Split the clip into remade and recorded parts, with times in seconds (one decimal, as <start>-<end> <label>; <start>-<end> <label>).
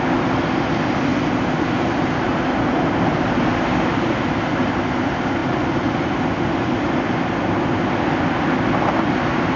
0.0-9.6 recorded